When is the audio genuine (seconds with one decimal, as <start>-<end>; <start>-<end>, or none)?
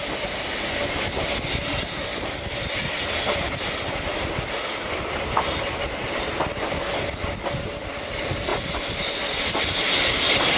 0.0-10.6